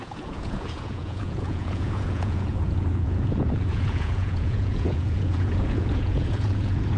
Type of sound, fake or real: fake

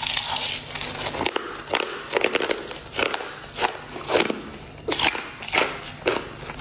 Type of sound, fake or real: real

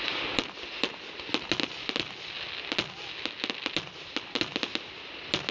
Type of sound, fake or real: real